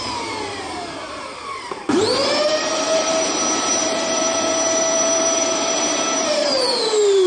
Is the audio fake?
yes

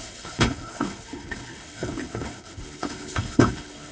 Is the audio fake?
yes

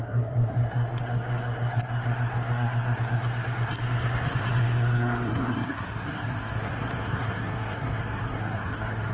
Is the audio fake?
yes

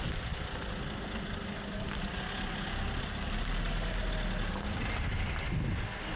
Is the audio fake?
no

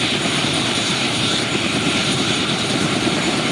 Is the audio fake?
yes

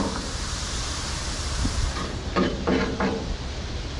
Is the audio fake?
yes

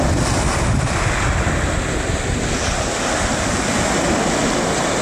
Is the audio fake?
no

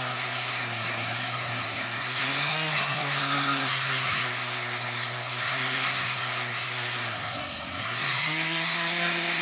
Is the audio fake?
yes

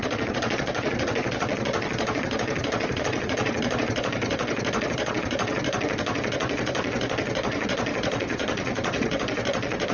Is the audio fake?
yes